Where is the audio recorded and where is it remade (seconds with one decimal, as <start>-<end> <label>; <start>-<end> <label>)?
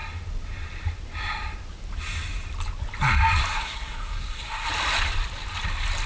0.0-3.5 recorded; 3.5-4.7 remade; 4.7-6.1 recorded